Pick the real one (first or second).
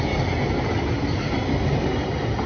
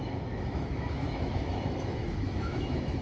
first